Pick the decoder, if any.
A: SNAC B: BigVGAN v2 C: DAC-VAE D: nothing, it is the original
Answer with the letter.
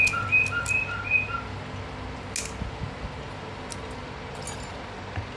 D